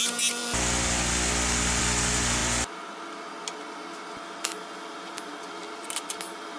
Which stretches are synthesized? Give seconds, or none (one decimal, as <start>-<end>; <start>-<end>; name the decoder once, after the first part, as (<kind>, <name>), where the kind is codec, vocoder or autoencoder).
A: none